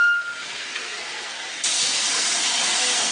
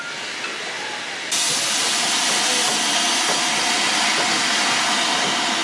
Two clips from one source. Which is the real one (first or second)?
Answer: second